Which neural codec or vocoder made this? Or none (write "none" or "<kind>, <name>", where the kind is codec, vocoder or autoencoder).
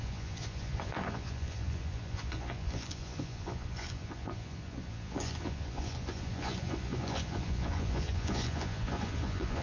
vocoder, Vocos